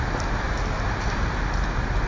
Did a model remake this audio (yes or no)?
no